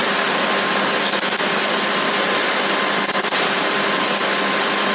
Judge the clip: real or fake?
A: real